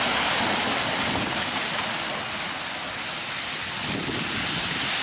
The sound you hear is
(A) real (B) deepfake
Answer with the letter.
A